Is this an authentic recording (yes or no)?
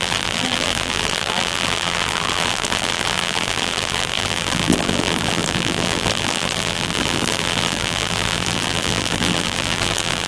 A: no